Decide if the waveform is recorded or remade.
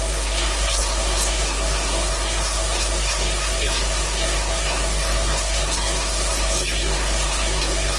remade